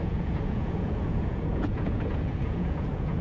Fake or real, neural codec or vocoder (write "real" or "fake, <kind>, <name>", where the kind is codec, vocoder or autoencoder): fake, vocoder, Vocos